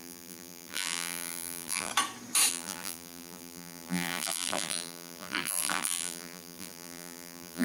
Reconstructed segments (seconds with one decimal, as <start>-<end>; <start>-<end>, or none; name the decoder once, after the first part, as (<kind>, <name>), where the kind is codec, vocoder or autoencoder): 0.0-1.9 (vocoder, BigVGAN v2); 2.5-7.6